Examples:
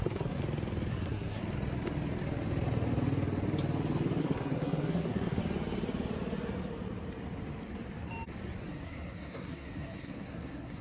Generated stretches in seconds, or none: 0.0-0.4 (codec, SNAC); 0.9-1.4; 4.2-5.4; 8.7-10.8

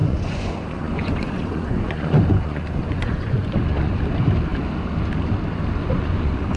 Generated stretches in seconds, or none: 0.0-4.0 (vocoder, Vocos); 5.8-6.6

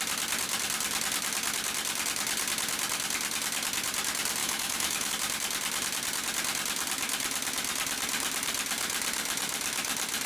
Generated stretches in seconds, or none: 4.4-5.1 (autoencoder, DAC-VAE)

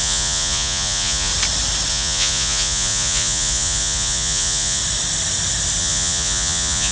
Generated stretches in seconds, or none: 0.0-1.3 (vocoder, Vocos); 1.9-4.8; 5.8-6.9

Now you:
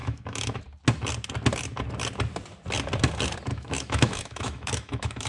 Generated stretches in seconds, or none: 0.0-0.6 (autoencoder, DAC-VAE); 3.5-5.3

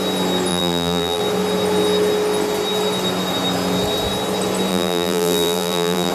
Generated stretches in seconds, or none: 0.5-1.2 (vocoder, BigVGAN v2); 4.7-6.1

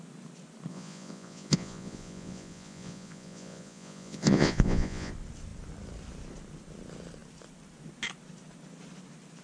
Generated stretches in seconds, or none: 0.7-5.1 (vocoder, Vocos)